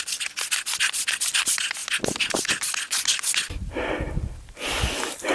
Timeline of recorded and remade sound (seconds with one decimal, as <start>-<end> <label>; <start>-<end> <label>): 0.0-5.3 recorded